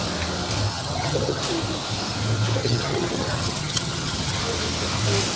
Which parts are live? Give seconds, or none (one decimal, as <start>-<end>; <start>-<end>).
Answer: 0.0-0.7; 1.4-2.6; 4.4-5.4